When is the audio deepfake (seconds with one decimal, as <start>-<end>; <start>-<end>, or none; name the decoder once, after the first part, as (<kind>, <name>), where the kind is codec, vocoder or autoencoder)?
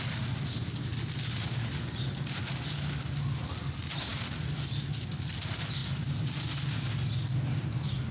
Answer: none